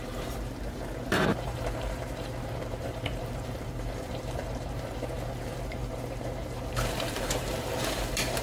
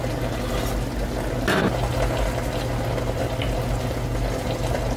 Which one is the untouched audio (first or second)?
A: second